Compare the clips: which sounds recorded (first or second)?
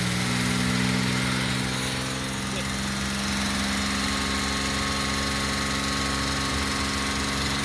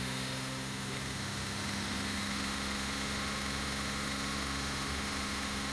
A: first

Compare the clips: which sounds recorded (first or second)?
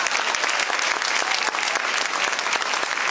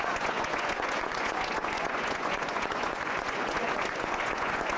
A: first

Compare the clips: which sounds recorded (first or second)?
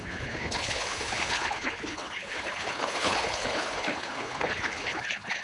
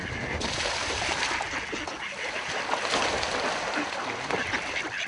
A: second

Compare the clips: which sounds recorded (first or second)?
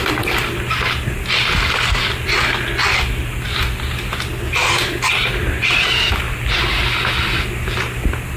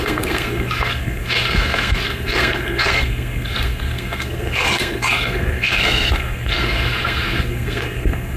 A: first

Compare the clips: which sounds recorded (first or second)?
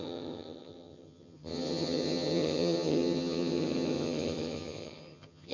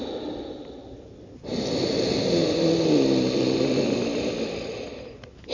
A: second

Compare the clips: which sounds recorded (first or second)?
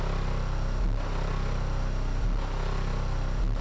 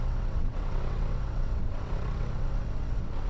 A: first